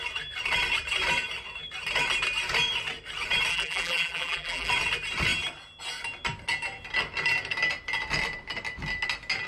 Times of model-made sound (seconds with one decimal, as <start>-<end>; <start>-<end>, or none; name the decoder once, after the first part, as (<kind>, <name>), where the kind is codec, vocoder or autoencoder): 3.5-4.7 (vocoder, BigVGAN v2)